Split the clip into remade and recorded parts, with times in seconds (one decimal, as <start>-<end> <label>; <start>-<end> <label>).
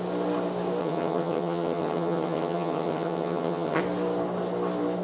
0.0-0.8 recorded; 0.8-3.8 remade; 3.8-5.0 recorded